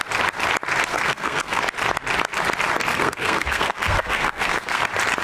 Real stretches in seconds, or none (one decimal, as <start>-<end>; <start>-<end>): 0.0-0.9; 1.6-2.9; 4.8-5.2